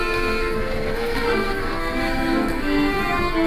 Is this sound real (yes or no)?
no